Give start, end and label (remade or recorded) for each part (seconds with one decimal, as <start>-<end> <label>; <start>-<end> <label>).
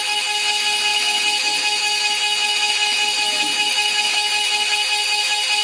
0.0-5.6 remade